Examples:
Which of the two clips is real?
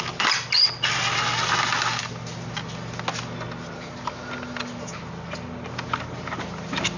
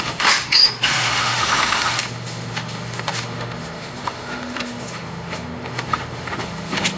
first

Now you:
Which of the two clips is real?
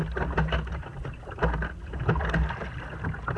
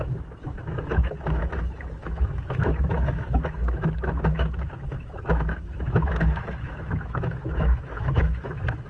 first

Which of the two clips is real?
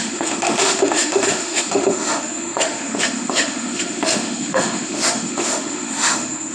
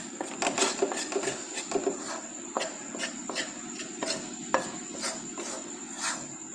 second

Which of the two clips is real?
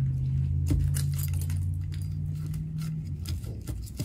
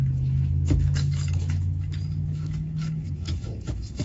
first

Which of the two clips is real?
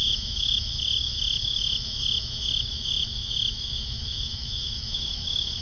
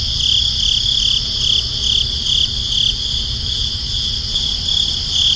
second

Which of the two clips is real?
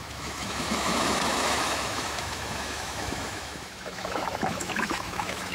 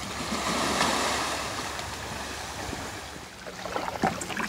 second